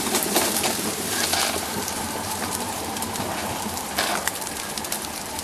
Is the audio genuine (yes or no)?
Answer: no